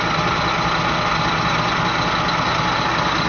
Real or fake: real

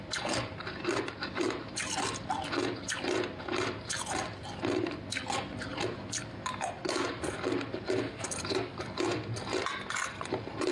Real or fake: real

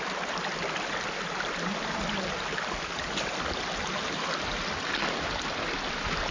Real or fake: real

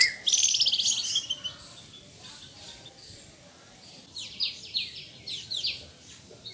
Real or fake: real